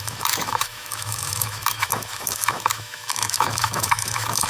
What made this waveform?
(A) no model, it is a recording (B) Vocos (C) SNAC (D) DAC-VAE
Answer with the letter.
D